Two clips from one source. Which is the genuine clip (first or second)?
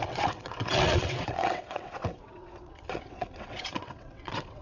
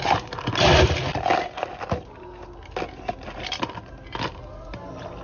second